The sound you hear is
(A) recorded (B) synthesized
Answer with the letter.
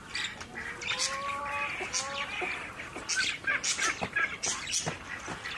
A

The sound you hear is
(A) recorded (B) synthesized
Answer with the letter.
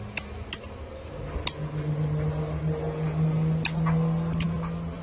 A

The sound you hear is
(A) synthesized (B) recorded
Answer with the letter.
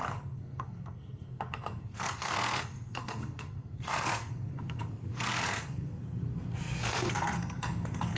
A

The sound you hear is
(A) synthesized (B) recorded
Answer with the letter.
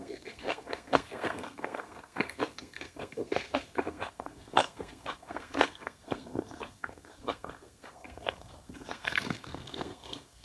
A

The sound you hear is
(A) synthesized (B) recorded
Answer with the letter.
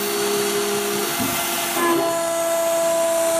B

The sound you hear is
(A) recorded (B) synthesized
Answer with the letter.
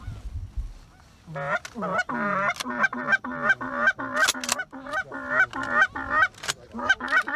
A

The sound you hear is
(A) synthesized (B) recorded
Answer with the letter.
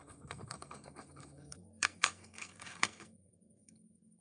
A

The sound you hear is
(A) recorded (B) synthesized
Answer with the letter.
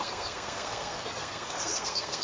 B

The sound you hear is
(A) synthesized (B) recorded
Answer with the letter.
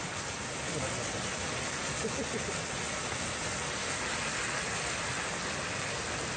B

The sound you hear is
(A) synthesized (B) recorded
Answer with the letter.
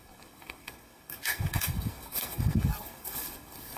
A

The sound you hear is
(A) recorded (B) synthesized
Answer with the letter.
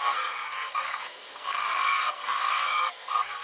B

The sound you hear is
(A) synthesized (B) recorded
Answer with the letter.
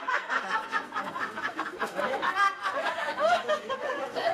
A